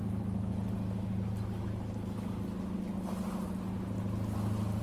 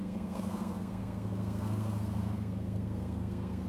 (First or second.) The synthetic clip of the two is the second